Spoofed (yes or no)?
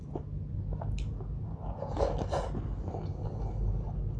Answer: no